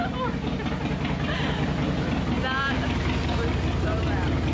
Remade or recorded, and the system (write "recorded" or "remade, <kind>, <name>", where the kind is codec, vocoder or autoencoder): recorded